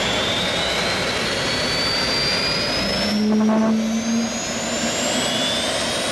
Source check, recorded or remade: recorded